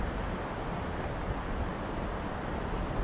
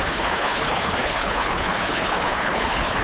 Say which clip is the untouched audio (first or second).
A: first